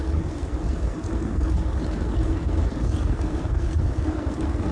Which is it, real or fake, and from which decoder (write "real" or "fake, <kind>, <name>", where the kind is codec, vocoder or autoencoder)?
fake, codec, SNAC